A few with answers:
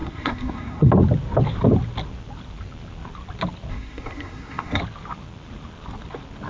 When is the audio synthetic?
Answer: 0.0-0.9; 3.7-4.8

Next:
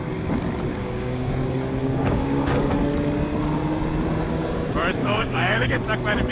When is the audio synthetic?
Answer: 0.8-1.3; 1.8-2.7; 5.0-5.8

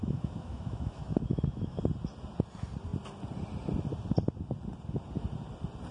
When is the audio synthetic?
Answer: 0.0-1.8